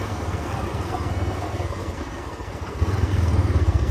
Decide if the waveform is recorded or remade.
remade